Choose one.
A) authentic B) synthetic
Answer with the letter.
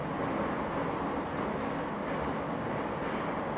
A